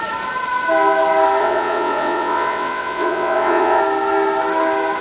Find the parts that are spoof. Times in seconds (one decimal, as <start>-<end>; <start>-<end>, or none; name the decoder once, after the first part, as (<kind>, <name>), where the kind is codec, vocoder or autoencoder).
1.4-3.8 (vocoder, WaveNeXt)